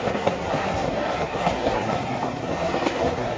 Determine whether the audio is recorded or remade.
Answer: remade